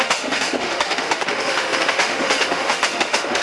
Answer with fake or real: fake